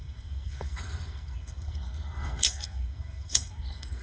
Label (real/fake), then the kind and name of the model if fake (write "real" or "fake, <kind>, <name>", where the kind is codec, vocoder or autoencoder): fake, codec, SNAC